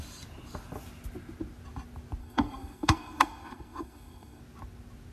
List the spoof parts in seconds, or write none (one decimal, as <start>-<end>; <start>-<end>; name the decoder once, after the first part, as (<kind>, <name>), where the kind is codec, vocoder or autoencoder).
2.2-4.4 (codec, SNAC)